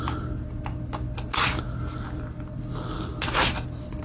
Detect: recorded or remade recorded